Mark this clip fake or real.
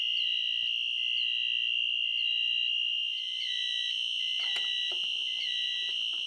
fake